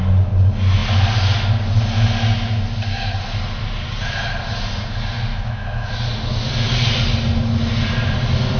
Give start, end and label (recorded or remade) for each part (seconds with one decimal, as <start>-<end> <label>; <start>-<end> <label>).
0.0-5.3 recorded; 5.3-5.9 remade; 5.9-8.6 recorded